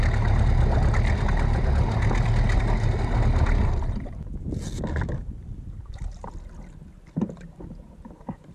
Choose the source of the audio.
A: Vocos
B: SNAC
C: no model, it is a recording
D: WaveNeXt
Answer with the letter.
C